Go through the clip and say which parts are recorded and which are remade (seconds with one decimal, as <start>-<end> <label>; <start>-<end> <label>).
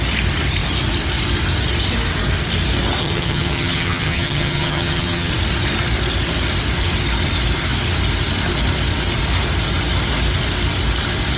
0.0-3.0 recorded; 3.0-5.3 remade; 5.3-11.4 recorded